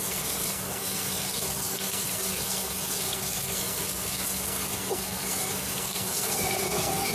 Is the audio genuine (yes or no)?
no